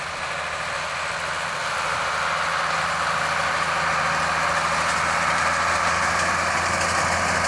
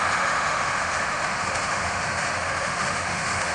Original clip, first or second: first